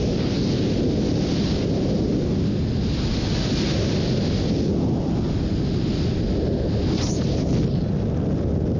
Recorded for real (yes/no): yes